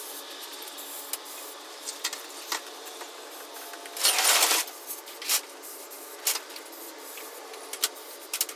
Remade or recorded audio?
recorded